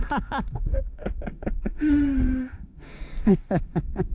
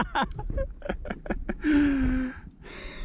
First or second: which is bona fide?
second